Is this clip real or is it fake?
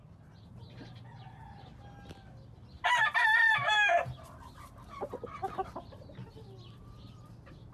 real